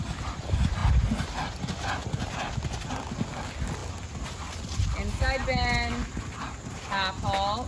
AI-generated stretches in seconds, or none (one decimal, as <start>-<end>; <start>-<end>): none